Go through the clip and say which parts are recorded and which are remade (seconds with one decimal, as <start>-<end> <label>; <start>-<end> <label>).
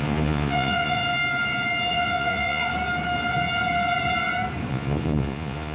0.0-1.0 remade; 1.0-1.9 recorded; 1.9-2.7 remade; 2.7-4.7 recorded; 4.7-5.7 remade